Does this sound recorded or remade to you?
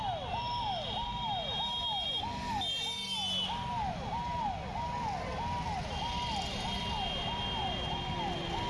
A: recorded